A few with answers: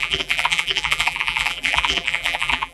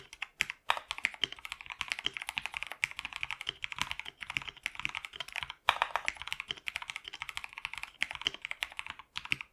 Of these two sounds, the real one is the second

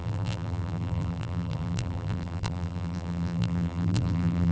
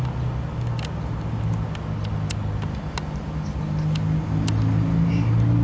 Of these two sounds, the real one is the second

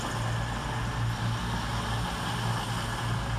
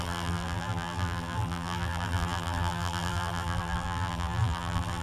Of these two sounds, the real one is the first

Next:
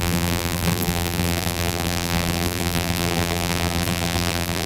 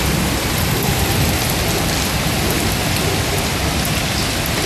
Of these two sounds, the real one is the second